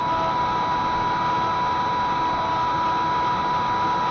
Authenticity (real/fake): real